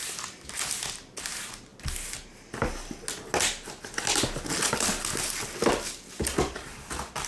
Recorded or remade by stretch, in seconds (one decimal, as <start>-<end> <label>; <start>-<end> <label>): 0.0-7.3 recorded